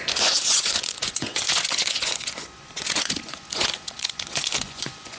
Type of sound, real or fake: fake